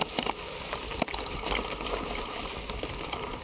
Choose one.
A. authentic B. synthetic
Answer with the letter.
A